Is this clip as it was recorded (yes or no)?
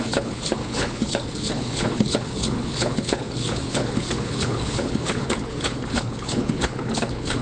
no